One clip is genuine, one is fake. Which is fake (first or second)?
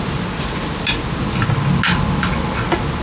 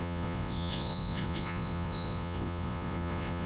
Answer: second